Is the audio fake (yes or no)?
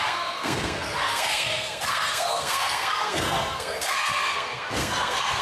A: yes